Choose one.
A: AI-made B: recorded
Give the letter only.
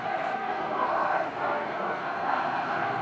A